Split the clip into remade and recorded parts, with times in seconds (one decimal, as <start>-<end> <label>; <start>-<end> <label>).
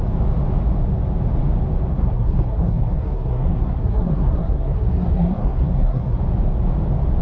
0.0-1.9 recorded; 1.9-6.2 remade; 6.2-7.2 recorded